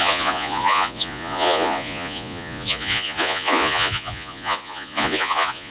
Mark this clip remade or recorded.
remade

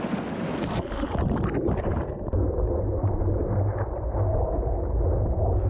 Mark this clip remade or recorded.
recorded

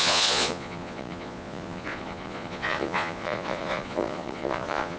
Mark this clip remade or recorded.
remade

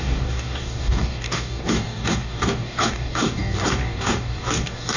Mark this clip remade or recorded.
remade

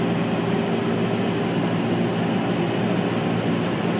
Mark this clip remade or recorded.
recorded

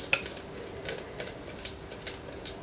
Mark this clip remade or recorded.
recorded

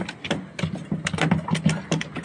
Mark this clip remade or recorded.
recorded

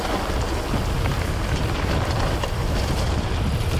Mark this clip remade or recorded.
recorded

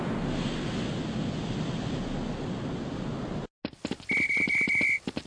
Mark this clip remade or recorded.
recorded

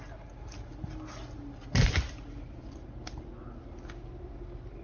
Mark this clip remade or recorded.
recorded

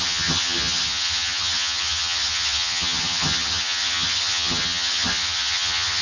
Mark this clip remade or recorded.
remade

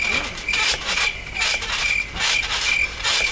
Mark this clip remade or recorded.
recorded